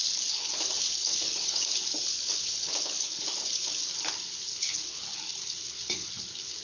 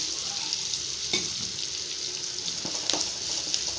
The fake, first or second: first